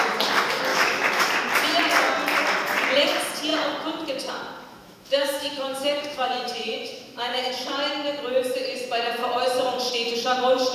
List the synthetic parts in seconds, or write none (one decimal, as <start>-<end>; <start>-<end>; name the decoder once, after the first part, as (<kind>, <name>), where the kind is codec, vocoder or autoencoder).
0.7-1.3 (autoencoder, DAC-VAE); 4.7-7.5

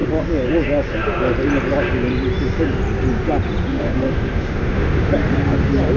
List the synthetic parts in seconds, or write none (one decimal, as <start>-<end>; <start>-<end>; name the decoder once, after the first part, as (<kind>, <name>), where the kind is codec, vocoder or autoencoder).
3.7-5.1 (autoencoder, DAC-VAE)

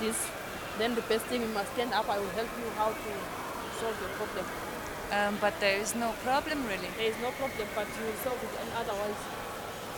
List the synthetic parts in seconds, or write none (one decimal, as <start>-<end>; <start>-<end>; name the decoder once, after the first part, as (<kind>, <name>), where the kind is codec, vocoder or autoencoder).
none

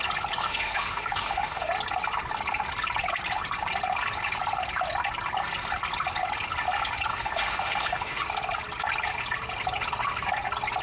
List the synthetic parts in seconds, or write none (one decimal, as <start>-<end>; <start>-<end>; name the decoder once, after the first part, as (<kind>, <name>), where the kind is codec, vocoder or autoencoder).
0.4-1.7 (autoencoder, DAC-VAE); 7.1-8.2

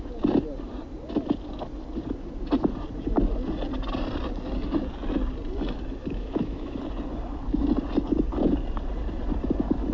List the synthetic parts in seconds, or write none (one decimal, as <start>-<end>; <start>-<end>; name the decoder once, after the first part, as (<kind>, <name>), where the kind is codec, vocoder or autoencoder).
6.0-6.8 (autoencoder, DAC-VAE)

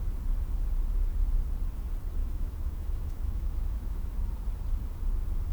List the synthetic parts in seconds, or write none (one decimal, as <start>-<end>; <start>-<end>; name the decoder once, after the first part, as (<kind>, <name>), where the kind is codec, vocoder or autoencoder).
2.2-4.3 (autoencoder, DAC-VAE)